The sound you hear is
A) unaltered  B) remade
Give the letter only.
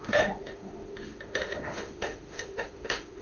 B